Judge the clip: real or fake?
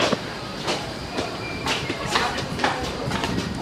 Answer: fake